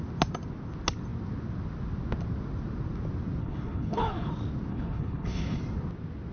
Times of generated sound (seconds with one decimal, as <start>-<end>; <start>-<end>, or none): 3.4-4.3; 4.7-5.6